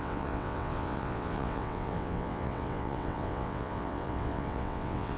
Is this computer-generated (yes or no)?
yes